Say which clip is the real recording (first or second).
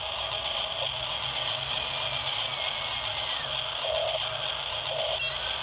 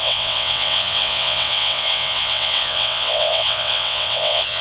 first